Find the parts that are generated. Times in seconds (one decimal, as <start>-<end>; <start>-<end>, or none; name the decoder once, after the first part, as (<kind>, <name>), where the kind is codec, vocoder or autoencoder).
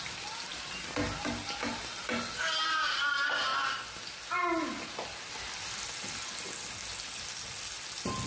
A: none